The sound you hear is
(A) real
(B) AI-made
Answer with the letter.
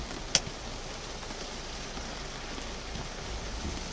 A